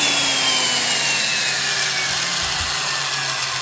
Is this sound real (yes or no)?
yes